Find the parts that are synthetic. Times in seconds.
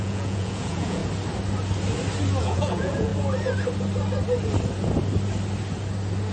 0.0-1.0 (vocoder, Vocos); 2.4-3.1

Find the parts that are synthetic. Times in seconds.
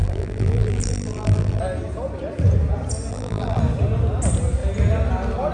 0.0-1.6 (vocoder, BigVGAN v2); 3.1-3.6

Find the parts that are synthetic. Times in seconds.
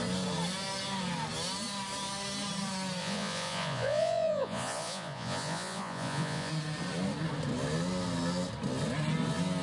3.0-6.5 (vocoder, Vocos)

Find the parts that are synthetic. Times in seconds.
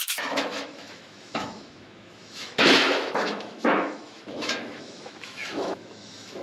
0.0-6.4 (autoencoder, DAC-VAE)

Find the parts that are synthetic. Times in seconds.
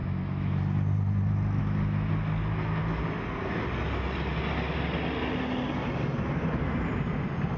0.0-0.6 (autoencoder, DAC-VAE); 1.6-2.1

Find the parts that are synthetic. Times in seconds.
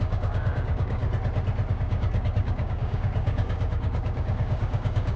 0.0-1.0 (codec, DAC); 1.7-5.2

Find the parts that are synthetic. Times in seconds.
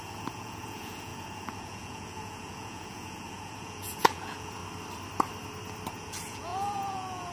0.0-4.6 (vocoder, Vocos); 5.9-7.3